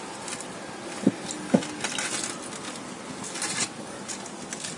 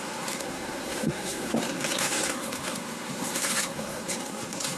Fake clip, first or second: second